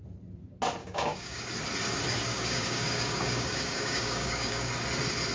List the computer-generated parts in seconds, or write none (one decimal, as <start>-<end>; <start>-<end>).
0.8-1.4; 2.3-4.7